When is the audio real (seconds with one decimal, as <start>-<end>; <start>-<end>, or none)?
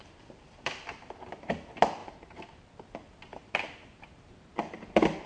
0.0-2.0; 2.8-3.3; 4.5-5.3